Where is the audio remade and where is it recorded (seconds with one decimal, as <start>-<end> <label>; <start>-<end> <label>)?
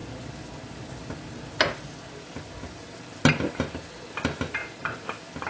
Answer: 0.0-4.6 recorded; 4.6-5.5 remade